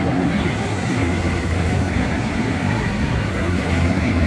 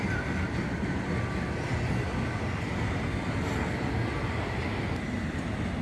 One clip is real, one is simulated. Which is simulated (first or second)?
first